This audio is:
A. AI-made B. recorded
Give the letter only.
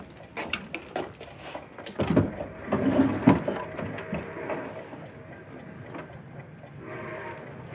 B